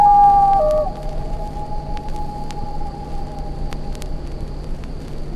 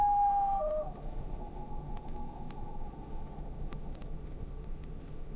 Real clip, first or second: first